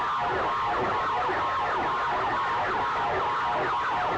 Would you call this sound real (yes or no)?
yes